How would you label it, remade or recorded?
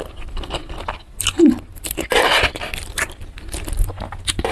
recorded